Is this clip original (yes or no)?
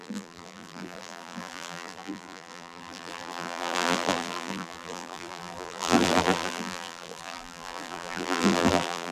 no